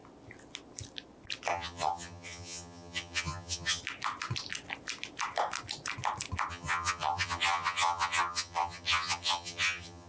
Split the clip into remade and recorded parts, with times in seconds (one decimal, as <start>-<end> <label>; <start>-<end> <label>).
0.0-1.5 recorded; 1.5-3.8 remade; 3.8-6.5 recorded; 6.5-10.1 remade